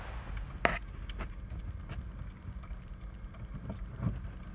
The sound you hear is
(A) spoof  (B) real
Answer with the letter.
B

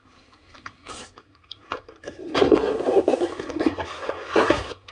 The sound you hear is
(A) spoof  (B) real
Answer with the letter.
A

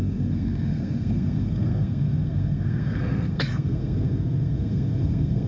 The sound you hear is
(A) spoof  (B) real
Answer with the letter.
A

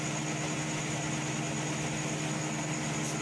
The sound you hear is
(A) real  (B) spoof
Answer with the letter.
A